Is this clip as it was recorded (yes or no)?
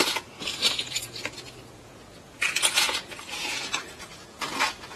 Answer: no